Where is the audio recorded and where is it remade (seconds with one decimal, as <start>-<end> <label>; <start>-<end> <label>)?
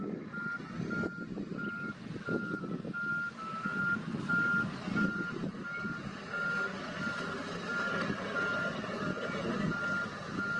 0.0-3.1 recorded; 3.1-3.8 remade; 3.8-10.6 recorded